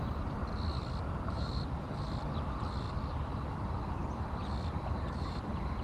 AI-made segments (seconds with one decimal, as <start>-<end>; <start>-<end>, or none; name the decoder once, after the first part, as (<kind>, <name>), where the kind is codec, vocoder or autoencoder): 0.0-0.4 (vocoder, BigVGAN v2); 1.1-1.5; 3.1-4.0; 5.0-5.8